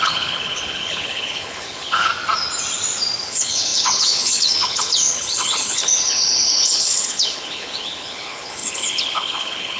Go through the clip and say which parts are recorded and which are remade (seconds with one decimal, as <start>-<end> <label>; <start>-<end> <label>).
0.0-2.1 remade; 2.1-3.2 recorded; 3.2-9.8 remade

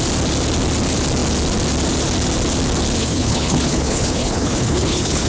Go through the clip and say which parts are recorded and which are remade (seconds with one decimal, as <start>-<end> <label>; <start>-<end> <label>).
0.0-3.0 recorded; 3.0-5.3 remade

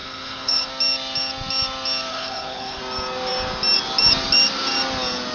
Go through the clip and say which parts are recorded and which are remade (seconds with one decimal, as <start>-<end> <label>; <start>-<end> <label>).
0.0-0.7 remade; 0.7-2.1 recorded; 2.1-2.8 remade; 2.8-5.3 recorded

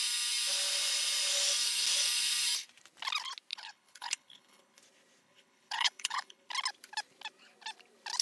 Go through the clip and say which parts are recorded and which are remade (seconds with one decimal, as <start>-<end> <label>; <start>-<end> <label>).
0.0-3.5 recorded; 3.5-4.8 remade; 4.8-5.2 recorded; 5.2-6.5 remade; 6.5-8.2 recorded

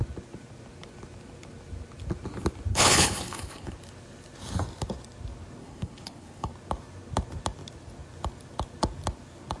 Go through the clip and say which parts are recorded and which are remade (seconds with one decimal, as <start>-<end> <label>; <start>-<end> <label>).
0.0-2.7 recorded; 2.7-3.7 remade; 3.7-5.6 recorded; 5.6-6.5 remade; 6.5-9.6 recorded